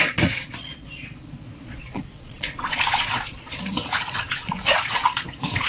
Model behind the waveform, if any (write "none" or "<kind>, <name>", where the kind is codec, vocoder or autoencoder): vocoder, Vocos